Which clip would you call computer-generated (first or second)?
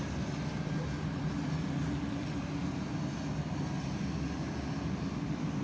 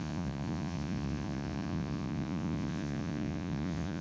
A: second